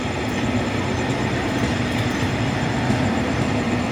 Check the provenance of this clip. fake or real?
fake